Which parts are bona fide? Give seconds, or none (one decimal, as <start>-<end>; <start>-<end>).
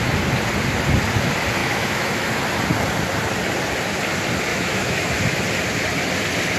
0.0-1.6; 2.3-4.5; 5.1-6.6